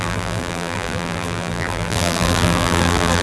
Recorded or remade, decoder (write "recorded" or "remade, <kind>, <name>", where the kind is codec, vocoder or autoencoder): remade, vocoder, BigVGAN v2